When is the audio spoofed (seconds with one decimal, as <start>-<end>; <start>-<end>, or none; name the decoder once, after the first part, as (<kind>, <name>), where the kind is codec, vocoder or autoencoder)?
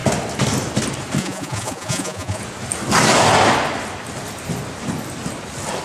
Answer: 1.2-2.4 (vocoder, Vocos)